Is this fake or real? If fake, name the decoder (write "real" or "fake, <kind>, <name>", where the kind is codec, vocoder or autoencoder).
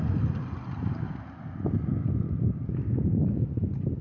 real